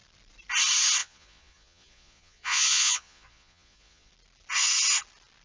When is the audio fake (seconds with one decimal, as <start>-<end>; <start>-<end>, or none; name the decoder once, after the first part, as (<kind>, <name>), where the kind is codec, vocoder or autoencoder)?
1.0-4.1 (vocoder, Vocos)